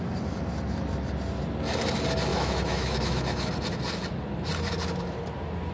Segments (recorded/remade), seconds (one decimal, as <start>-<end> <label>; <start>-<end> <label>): 0.0-2.3 recorded; 2.3-3.5 remade; 3.5-5.7 recorded